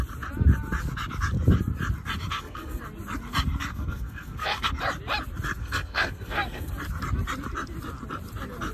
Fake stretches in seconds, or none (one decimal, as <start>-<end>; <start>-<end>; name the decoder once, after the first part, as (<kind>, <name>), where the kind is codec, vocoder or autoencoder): 2.3-2.8 (codec, SNAC); 3.7-4.7; 5.6-6.7